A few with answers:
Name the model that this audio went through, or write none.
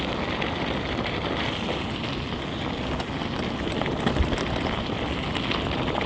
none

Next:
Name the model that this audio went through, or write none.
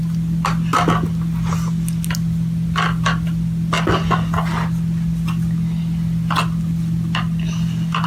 none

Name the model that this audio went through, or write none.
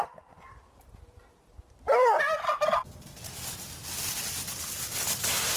none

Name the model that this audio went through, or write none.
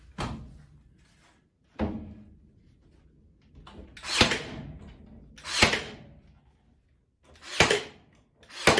none